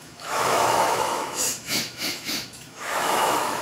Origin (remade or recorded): remade